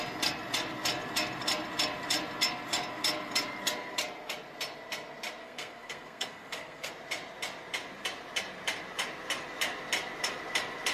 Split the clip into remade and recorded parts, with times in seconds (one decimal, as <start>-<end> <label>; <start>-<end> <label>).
0.0-5.4 recorded; 5.4-6.9 remade; 6.9-10.9 recorded